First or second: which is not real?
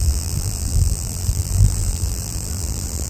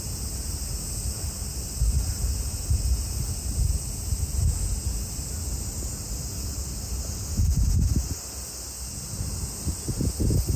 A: first